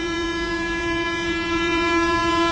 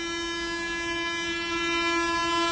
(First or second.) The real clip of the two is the second